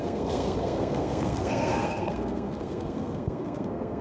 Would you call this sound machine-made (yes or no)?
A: yes